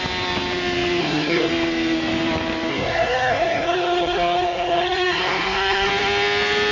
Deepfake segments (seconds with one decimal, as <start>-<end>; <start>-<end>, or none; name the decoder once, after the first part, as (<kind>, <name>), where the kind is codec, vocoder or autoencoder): 1.0-1.5 (codec, SNAC); 2.7-5.9